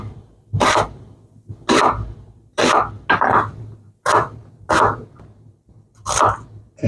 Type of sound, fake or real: real